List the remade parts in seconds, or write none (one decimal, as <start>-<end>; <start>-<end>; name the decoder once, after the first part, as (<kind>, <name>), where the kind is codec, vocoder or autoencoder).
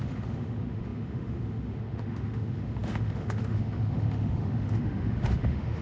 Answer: 0.0-5.8 (autoencoder, DAC-VAE)